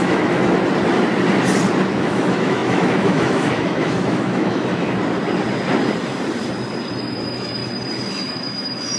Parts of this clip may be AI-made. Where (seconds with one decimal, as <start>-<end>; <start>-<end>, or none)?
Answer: 0.0-0.6; 1.9-5.0; 7.0-7.6; 8.1-9.0